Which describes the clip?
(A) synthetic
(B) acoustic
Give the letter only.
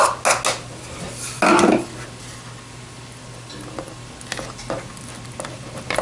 B